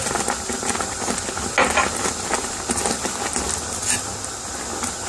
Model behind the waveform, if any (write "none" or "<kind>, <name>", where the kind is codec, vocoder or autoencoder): none